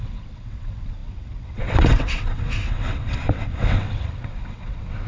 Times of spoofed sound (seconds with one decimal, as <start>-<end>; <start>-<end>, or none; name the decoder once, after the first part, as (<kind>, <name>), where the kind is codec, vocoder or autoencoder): 0.0-5.1 (vocoder, WaveNeXt)